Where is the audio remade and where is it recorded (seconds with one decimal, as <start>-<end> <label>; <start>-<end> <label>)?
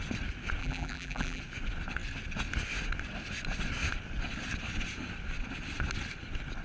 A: 0.0-0.6 recorded; 0.6-1.4 remade; 1.4-6.6 recorded